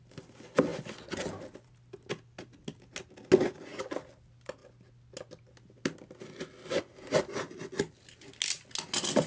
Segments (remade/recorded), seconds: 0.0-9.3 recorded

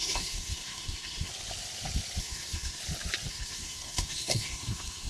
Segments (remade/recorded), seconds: 0.0-1.3 remade; 1.3-2.2 recorded; 2.2-2.8 remade; 2.8-3.3 recorded; 3.3-5.1 remade

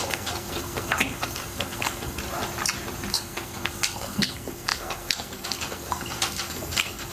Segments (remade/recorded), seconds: 0.0-2.2 remade; 2.2-3.1 recorded; 3.1-7.1 remade